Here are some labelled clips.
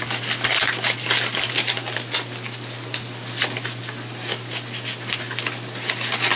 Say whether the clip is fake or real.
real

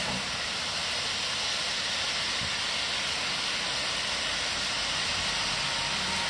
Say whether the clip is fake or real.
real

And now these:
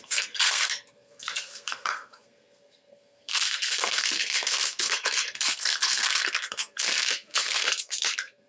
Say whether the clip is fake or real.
fake